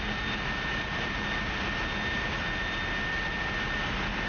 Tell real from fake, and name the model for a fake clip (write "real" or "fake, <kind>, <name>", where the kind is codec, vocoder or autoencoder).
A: real